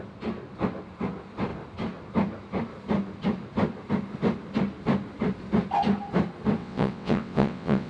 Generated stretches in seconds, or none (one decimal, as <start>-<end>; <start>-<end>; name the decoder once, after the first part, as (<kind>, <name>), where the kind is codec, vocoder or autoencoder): 6.6-7.9 (vocoder, WaveNeXt)